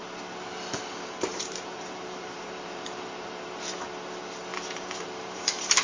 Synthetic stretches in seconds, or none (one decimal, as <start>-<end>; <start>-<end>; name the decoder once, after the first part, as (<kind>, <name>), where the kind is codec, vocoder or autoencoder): 1.3-3.7 (vocoder, BigVGAN v2); 4.5-5.8

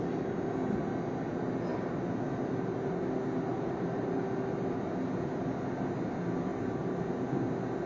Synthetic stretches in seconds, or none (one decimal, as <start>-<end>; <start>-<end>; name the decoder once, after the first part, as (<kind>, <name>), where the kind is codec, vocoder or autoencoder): 3.5-4.2 (vocoder, BigVGAN v2); 6.5-7.3